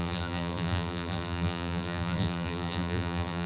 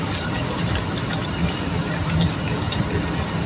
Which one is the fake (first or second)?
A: first